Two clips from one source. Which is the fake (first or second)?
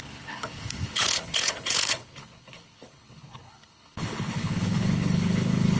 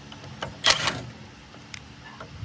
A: first